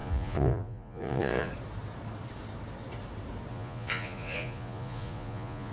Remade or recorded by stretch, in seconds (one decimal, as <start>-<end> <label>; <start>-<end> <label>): 0.0-1.5 remade; 1.5-3.5 recorded; 3.5-5.7 remade